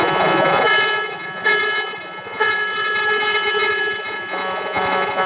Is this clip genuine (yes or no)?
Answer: no